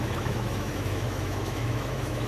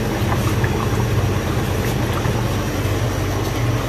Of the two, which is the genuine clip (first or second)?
second